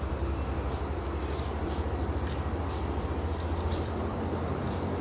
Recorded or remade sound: remade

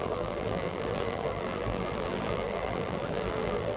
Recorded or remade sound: remade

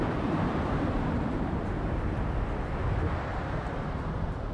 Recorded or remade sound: remade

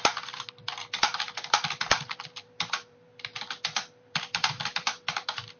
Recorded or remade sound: remade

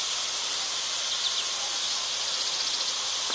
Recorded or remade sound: recorded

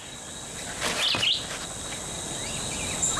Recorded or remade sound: recorded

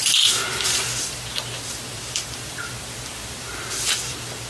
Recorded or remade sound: remade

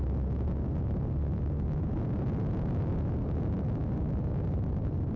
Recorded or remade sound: recorded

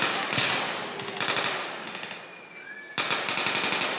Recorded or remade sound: recorded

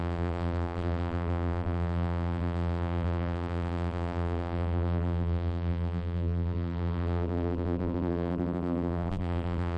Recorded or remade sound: remade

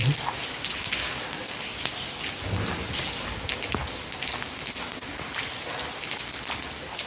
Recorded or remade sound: recorded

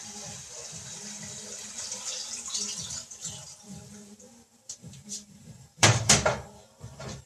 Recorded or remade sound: remade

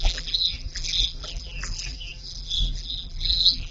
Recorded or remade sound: remade